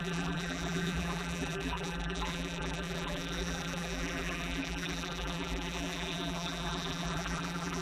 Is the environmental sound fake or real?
fake